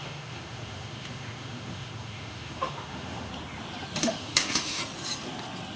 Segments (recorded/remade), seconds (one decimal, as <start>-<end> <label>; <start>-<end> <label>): 0.0-3.3 remade; 3.3-4.0 recorded; 4.0-4.8 remade; 4.8-5.8 recorded